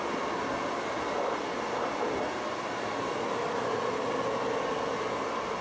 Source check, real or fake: real